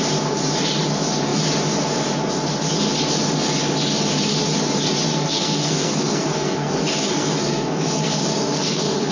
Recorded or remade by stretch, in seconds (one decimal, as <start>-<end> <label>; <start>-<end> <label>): 0.0-5.1 recorded; 5.1-9.1 remade